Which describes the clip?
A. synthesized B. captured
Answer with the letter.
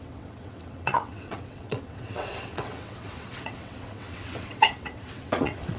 A